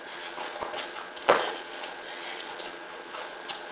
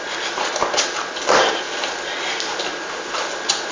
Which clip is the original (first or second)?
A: second